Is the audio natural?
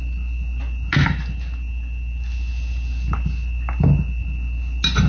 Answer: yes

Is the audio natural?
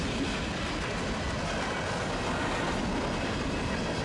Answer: yes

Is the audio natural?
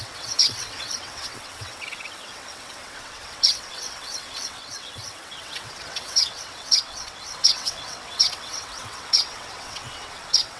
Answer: no